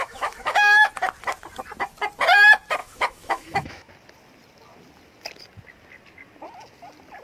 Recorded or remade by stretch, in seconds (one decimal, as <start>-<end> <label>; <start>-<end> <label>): 0.0-0.9 remade; 0.9-2.8 recorded; 2.8-3.9 remade; 3.9-7.2 recorded